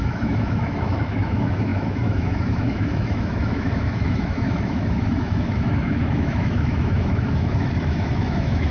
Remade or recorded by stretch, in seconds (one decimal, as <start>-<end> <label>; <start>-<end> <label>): 0.0-8.7 remade